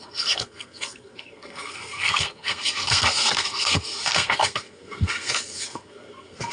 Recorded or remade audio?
remade